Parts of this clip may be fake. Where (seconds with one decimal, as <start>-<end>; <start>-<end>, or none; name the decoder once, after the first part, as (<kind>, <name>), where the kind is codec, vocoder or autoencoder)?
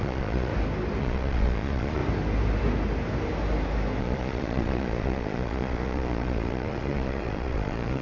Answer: 0.0-0.5 (vocoder, Vocos); 1.0-2.0; 4.0-8.0